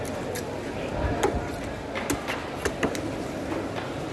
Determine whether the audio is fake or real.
real